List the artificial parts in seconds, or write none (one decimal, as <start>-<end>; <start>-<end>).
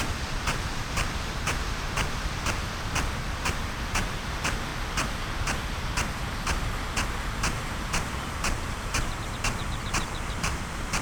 0.0-4.7; 7.2-11.0